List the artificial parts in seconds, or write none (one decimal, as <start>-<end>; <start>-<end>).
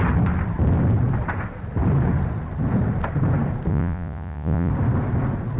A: 3.7-4.7